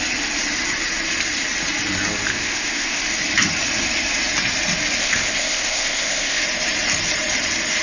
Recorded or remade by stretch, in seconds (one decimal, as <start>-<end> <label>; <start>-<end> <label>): 0.0-2.3 recorded; 2.3-3.0 remade; 3.0-5.0 recorded; 5.0-6.4 remade; 6.4-7.8 recorded